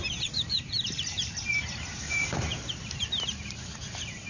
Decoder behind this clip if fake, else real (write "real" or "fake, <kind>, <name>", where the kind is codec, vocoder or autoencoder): fake, vocoder, BigVGAN v2